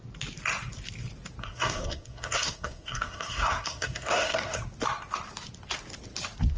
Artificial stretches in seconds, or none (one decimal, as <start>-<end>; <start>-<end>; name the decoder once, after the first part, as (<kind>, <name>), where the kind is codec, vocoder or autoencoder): 1.4-4.6 (codec, SNAC)